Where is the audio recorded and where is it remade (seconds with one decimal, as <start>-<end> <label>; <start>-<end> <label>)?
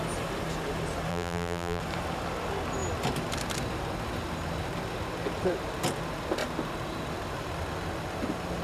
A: 0.0-1.1 recorded; 1.1-1.8 remade; 1.8-8.6 recorded